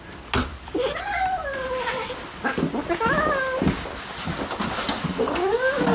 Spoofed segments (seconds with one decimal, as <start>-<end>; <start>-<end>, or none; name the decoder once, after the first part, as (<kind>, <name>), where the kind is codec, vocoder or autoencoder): none